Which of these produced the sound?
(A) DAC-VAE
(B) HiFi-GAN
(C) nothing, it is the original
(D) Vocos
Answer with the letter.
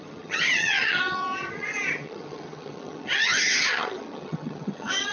B